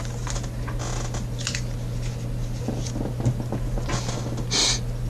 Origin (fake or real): real